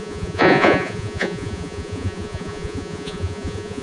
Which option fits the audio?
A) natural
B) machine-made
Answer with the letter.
B